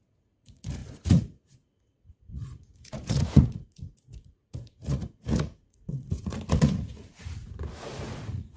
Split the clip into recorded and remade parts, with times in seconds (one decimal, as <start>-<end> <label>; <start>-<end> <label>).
0.0-8.6 remade